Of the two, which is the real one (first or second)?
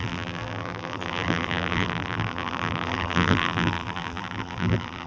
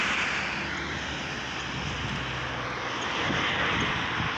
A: second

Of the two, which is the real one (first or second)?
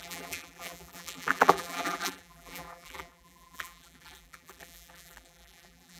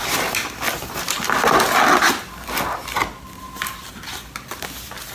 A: second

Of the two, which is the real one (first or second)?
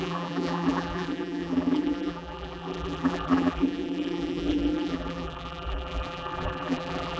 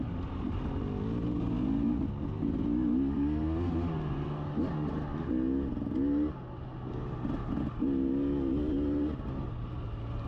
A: second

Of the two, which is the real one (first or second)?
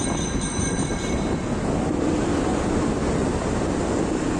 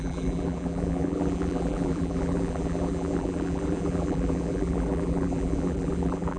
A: first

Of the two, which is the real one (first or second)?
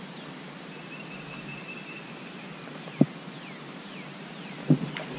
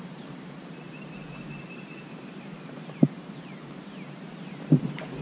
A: first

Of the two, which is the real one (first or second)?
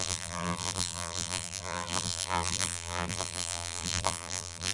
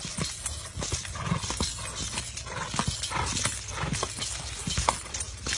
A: second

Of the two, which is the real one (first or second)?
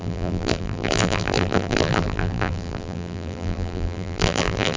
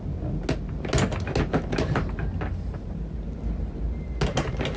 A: second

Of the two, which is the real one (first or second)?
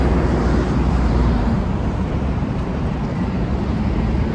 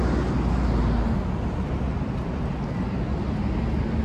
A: second